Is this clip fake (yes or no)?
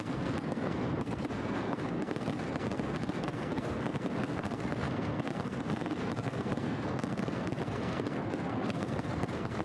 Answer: yes